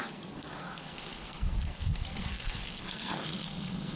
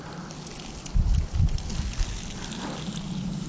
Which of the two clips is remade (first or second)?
first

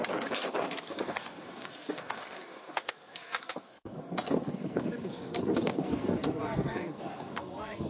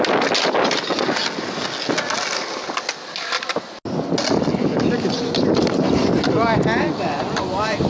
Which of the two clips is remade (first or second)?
first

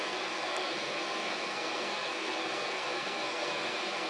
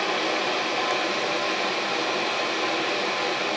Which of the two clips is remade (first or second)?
first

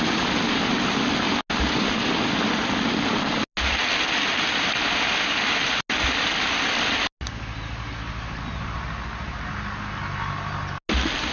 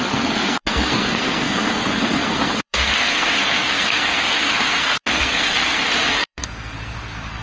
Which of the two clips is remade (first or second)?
second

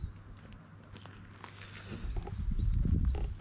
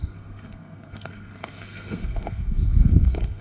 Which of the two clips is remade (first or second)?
second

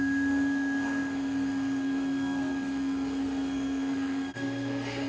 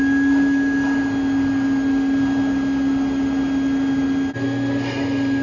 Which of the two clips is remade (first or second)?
first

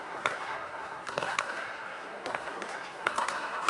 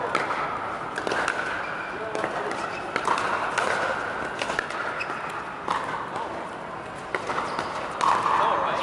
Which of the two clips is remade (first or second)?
first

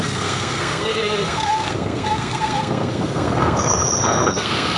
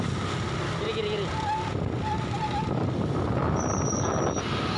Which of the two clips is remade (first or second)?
first